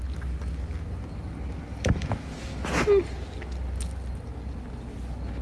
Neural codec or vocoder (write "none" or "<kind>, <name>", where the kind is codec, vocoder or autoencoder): none